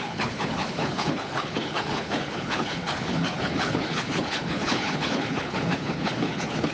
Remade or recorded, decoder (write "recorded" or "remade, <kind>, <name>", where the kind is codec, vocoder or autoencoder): remade, codec, HILCodec